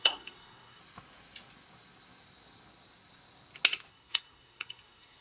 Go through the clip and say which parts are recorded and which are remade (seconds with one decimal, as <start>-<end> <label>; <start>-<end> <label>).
0.0-0.8 remade; 0.8-3.9 recorded; 3.9-5.2 remade